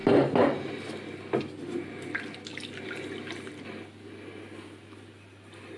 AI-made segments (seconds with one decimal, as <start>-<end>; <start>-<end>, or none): none